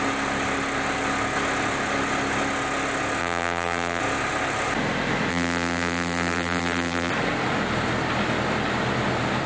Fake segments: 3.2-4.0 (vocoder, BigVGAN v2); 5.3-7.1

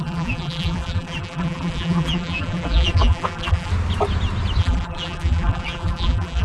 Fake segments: 0.0-3.7 (vocoder, BigVGAN v2); 4.6-6.4

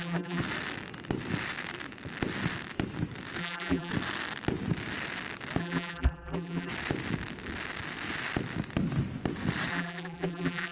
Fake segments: 0.0-0.4 (vocoder, BigVGAN v2); 3.4-3.9; 5.6-6.7; 9.7-10.7

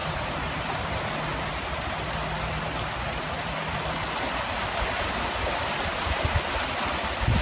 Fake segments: 0.0-0.6 (vocoder, BigVGAN v2); 5.9-6.4

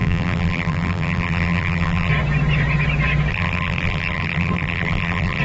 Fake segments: 0.0-2.1 (vocoder, BigVGAN v2); 3.3-5.4

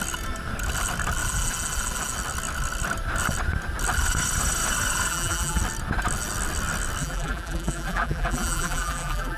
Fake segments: 5.1-5.6 (vocoder, BigVGAN v2); 7.0-9.4